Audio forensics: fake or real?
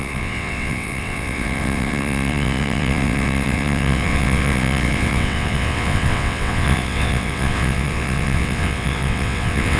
fake